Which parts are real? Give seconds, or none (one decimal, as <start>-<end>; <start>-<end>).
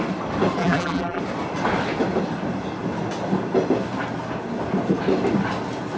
0.0-0.6; 1.2-6.0